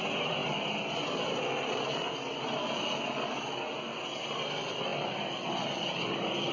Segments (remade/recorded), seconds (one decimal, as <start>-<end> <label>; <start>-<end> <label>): 0.0-6.5 recorded